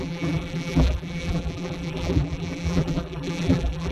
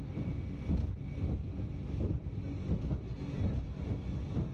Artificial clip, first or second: first